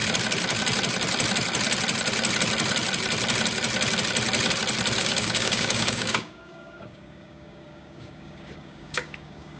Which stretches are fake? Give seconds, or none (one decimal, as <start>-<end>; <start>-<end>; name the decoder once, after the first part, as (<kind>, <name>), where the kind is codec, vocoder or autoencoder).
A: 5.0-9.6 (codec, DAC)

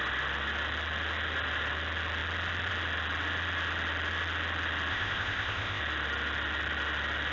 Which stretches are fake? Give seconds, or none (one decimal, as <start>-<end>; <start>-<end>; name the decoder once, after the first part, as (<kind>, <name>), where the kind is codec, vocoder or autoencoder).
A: 4.9-5.8 (codec, ZipCodec)

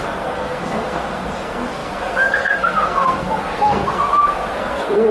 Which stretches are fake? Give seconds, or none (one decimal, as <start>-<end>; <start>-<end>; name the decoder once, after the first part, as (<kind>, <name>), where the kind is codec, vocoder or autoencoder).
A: 0.0-5.1 (codec, SNAC)

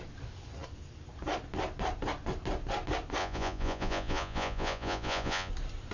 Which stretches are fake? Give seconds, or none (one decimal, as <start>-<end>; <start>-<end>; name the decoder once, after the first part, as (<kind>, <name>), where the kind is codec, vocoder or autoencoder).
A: 3.2-5.5 (vocoder, Vocos)

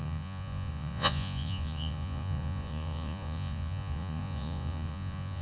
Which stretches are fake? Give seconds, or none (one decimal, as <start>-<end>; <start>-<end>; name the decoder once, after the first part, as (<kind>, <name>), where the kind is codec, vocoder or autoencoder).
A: 0.0-5.4 (vocoder, Vocos)